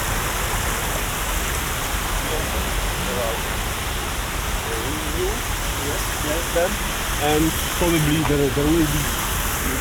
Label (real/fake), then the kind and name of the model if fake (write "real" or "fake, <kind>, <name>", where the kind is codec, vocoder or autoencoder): real